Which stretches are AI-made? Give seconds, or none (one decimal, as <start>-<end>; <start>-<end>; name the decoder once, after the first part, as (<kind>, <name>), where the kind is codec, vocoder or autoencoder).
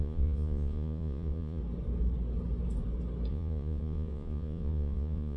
0.0-1.6 (vocoder, Vocos); 3.3-5.4